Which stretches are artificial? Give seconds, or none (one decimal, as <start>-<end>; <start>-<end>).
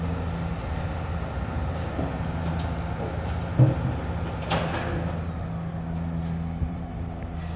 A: 6.6-7.6